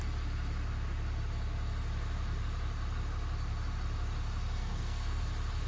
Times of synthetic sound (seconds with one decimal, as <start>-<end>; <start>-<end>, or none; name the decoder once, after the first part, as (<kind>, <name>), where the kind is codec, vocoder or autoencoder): 4.6-5.2 (codec, SNAC)